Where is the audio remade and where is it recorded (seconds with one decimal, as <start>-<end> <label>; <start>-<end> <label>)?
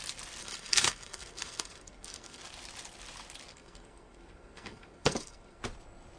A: 0.0-0.4 recorded; 0.4-2.4 remade; 2.4-3.5 recorded; 3.5-5.6 remade; 5.6-6.2 recorded